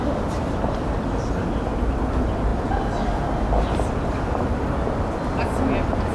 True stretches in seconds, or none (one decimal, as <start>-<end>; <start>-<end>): 0.0-6.1